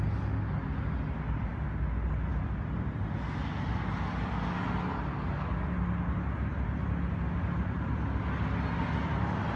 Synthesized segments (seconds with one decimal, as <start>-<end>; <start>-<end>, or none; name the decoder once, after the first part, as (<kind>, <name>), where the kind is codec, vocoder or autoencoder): none